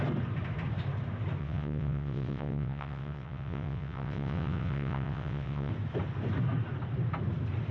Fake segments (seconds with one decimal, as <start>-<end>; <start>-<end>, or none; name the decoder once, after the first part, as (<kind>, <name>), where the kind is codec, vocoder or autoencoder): 1.4-5.7 (vocoder, WaveNeXt)